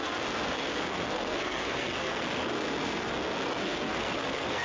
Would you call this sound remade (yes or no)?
yes